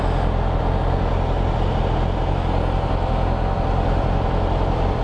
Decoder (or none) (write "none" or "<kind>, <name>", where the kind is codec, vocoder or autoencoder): none